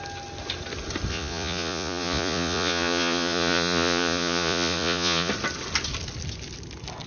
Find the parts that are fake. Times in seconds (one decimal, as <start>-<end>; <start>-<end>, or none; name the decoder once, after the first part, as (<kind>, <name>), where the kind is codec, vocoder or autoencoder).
1.1-5.3 (vocoder, Vocos)